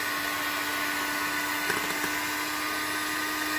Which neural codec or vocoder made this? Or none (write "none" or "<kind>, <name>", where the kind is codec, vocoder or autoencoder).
none